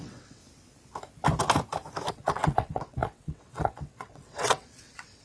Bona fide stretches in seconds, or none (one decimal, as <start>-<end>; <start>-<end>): 0.4-2.1